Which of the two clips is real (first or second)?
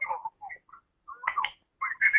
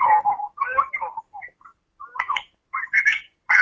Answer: first